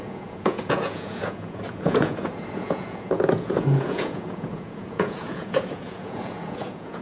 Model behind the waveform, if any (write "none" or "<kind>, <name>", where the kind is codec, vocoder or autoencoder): vocoder, Vocos